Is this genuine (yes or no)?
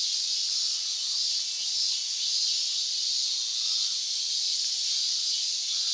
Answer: yes